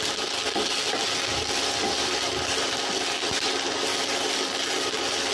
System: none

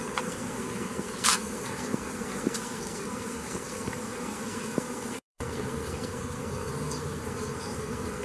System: codec, SNAC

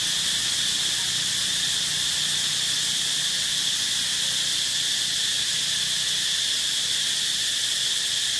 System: none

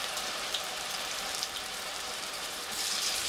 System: vocoder, BigVGAN v2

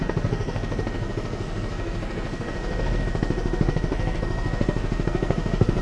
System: codec, SNAC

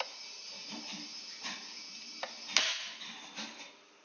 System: none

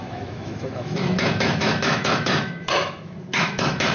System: autoencoder, DAC-VAE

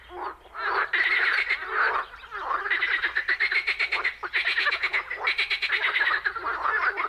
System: none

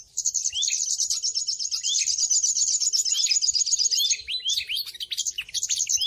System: none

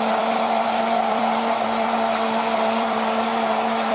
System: vocoder, BigVGAN v2